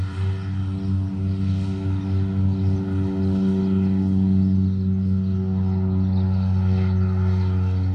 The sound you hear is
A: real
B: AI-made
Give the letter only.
A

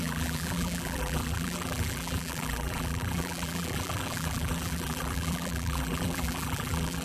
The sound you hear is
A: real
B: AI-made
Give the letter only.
B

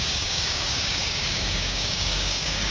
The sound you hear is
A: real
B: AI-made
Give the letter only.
B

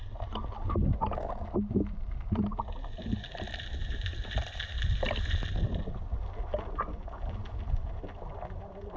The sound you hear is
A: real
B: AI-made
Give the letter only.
A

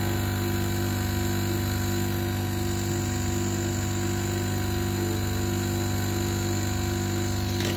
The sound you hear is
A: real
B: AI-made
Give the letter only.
A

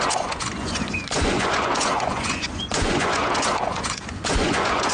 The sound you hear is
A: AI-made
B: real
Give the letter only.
A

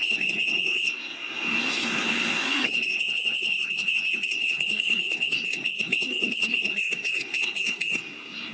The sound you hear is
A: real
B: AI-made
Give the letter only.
B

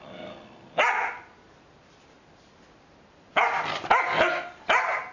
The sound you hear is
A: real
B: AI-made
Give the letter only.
A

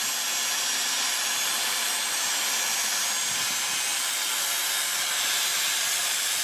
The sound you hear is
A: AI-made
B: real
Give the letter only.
B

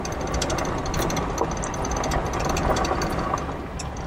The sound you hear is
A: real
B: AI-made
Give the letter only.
A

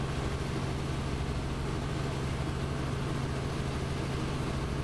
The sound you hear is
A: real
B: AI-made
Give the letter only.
A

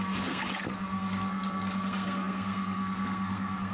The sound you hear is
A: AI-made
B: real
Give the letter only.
A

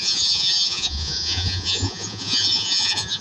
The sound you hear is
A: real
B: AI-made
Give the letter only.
B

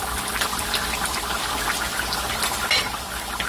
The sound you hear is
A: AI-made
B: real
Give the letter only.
B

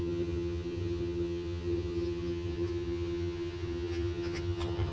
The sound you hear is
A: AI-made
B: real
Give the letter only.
A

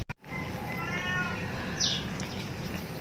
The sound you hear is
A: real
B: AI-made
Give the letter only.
A